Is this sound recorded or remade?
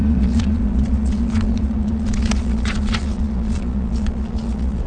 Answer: remade